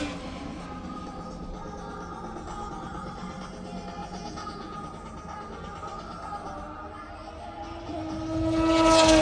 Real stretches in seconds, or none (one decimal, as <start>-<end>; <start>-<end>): 0.0-4.0; 4.9-9.2